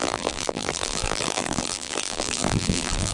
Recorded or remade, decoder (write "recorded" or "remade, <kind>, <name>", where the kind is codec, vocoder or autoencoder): remade, vocoder, BigVGAN v2